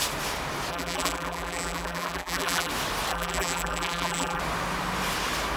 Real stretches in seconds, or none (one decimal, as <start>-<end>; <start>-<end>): 0.0-0.7; 2.7-3.1; 4.4-5.6